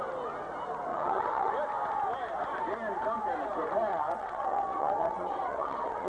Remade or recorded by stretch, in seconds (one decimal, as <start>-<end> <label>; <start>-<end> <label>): 0.0-0.9 recorded; 0.9-1.5 remade; 1.5-3.9 recorded; 3.9-6.1 remade